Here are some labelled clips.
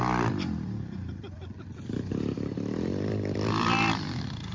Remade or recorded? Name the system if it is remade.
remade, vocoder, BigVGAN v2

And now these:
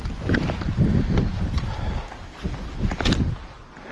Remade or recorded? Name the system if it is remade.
recorded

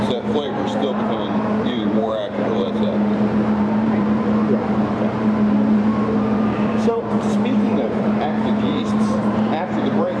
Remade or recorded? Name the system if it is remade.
remade, vocoder, BigVGAN v2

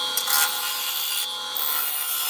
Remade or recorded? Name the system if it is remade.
recorded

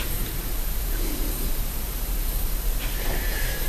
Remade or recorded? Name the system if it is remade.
remade, vocoder, BigVGAN v2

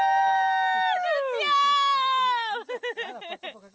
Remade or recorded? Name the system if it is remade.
recorded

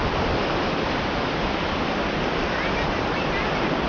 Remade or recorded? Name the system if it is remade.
remade, vocoder, BigVGAN v2